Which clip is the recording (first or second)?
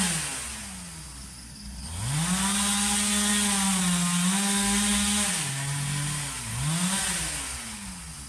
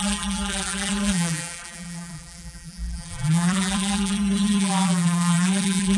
first